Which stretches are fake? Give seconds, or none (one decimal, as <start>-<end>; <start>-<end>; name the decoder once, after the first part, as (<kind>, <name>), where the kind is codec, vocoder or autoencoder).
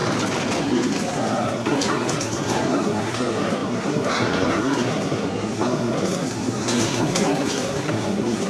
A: 0.6-8.5 (codec, SNAC)